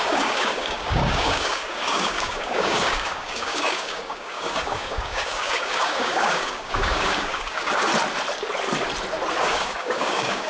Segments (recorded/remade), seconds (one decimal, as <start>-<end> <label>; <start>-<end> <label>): 0.0-7.9 remade; 7.9-9.4 recorded; 9.4-10.5 remade